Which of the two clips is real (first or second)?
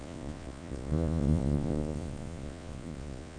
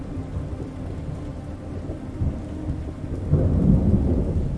second